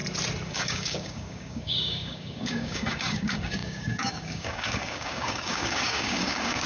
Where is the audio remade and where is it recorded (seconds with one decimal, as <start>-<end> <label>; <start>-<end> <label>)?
0.0-0.5 recorded; 0.5-6.7 remade